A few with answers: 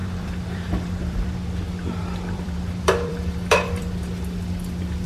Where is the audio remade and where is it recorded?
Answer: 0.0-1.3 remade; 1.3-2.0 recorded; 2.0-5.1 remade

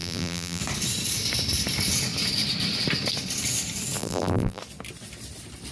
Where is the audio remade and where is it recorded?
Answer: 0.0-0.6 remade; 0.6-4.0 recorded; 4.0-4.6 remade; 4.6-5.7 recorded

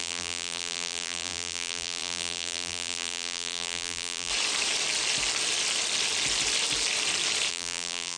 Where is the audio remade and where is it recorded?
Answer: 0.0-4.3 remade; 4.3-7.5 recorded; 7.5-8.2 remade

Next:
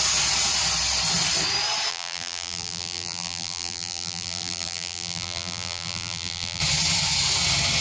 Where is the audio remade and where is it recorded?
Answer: 0.0-1.9 recorded; 1.9-6.6 remade; 6.6-7.8 recorded

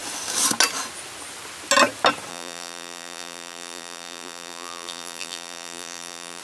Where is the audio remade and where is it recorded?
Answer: 0.0-2.3 recorded; 2.3-6.4 remade

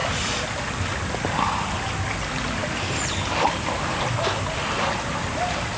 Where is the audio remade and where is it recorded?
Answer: 0.0-5.8 recorded